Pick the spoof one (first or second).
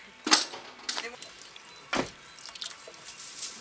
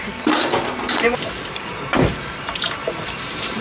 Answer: second